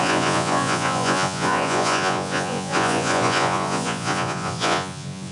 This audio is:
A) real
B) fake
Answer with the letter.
B